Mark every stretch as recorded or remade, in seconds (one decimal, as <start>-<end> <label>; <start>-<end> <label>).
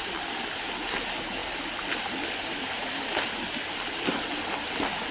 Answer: 0.0-5.1 recorded